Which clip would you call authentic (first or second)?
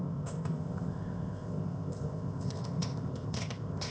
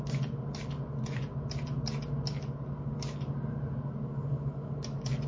second